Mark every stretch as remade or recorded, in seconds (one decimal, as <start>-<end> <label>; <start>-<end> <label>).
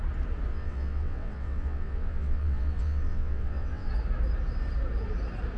0.0-0.5 recorded; 0.5-3.9 remade; 3.9-5.6 recorded